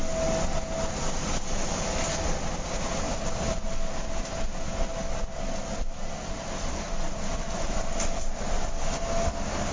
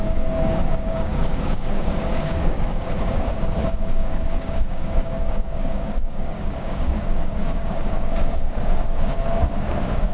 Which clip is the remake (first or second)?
second